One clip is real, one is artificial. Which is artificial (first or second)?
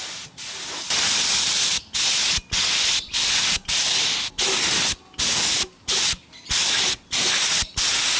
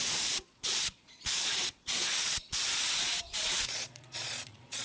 second